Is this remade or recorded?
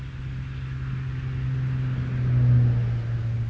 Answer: recorded